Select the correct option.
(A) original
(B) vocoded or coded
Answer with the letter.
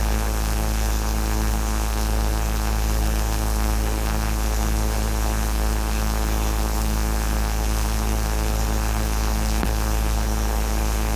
B